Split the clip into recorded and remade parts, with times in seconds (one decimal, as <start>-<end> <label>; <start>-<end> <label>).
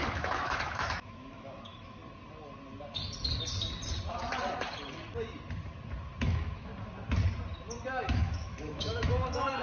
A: 0.0-2.0 remade; 2.0-6.2 recorded; 6.2-6.7 remade; 6.7-7.9 recorded; 7.9-9.6 remade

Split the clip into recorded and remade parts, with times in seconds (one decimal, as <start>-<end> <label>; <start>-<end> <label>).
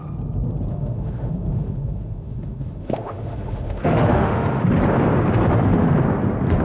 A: 0.0-0.7 recorded; 0.7-4.7 remade; 4.7-5.4 recorded; 5.4-5.9 remade; 5.9-6.6 recorded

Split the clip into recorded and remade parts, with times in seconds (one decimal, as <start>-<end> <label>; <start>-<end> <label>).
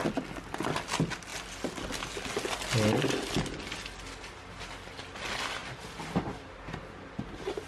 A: 0.0-7.7 recorded